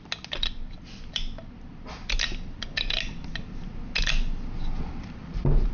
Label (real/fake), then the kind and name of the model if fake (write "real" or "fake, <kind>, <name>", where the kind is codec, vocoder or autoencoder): real